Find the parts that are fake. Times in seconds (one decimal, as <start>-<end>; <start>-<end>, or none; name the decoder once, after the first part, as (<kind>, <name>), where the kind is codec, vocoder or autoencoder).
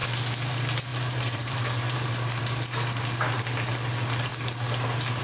0.9-2.4 (vocoder, BigVGAN v2)